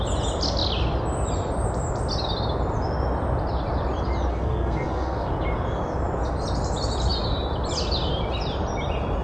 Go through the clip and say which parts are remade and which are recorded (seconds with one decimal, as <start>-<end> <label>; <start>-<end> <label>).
0.0-4.3 recorded; 4.3-5.3 remade; 5.3-9.2 recorded